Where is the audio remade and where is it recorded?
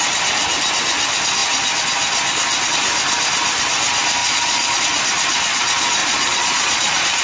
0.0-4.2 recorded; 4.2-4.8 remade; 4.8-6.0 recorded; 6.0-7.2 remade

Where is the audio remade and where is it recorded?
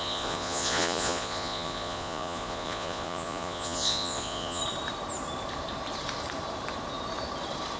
0.0-4.6 remade; 4.6-7.8 recorded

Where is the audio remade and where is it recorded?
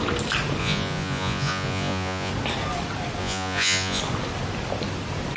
0.0-0.6 recorded; 0.6-2.3 remade; 2.3-3.2 recorded; 3.2-4.0 remade; 4.0-5.4 recorded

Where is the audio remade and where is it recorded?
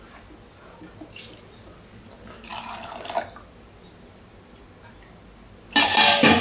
0.0-6.4 recorded